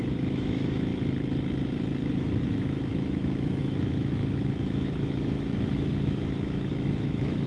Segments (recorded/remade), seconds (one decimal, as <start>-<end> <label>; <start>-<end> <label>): 0.0-0.9 remade; 0.9-2.1 recorded; 2.1-7.5 remade